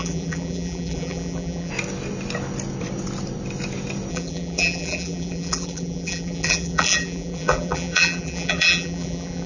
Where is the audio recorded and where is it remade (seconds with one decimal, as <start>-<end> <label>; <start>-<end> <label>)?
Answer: 0.0-1.7 remade; 1.7-4.1 recorded; 4.1-9.5 remade